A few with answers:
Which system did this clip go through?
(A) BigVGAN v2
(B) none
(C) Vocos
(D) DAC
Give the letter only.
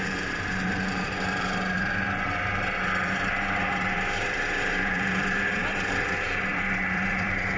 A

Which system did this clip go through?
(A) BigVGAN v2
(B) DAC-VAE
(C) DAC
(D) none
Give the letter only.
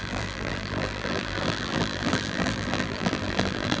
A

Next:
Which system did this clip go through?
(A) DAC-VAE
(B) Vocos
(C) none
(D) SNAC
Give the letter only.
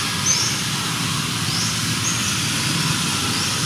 C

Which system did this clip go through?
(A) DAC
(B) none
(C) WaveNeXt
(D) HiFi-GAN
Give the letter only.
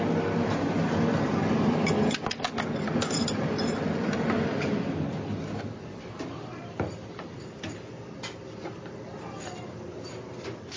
B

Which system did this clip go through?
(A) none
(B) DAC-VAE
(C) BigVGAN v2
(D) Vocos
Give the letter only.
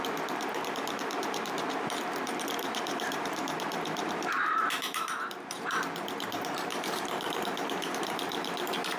C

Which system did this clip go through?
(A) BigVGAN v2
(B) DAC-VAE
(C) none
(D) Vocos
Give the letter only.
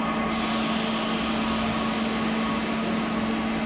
C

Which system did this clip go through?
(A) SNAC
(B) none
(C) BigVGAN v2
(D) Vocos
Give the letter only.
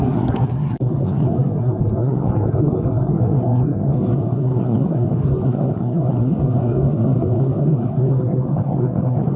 A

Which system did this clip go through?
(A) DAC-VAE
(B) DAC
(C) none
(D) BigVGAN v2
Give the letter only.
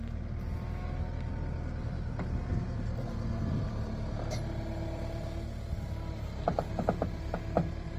C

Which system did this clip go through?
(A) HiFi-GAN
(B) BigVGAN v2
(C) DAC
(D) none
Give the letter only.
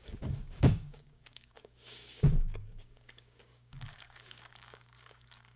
C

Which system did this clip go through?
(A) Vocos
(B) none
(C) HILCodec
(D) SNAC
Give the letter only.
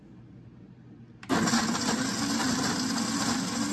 B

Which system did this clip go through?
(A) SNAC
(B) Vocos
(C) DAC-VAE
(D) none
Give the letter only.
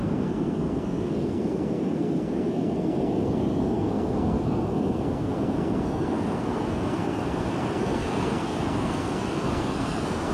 A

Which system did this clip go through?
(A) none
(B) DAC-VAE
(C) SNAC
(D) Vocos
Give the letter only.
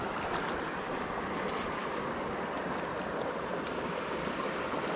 A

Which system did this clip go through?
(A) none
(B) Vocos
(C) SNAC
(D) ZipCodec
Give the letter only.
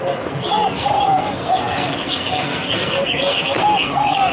C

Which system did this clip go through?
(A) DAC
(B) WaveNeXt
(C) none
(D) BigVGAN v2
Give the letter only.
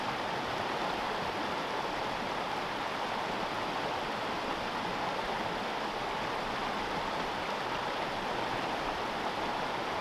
C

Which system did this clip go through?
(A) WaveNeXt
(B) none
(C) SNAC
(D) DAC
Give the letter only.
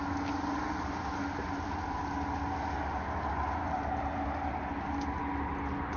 B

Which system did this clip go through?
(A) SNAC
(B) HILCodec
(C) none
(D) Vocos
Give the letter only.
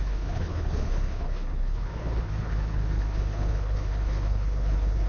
B